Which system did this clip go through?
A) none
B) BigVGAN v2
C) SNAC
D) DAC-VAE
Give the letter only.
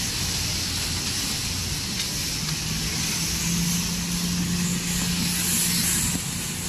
A